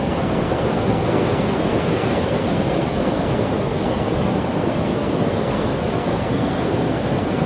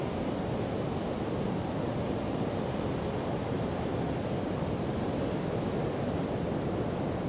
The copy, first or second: first